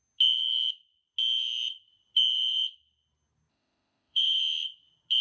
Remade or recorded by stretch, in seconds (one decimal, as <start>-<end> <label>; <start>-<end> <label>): 0.0-3.5 recorded; 3.5-4.4 remade; 4.4-5.2 recorded